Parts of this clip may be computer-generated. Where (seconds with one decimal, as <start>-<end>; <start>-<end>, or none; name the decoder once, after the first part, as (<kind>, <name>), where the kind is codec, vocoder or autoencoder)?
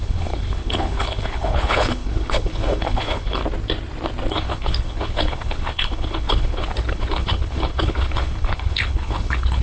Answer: 0.0-3.4 (codec, HILCodec); 4.3-9.6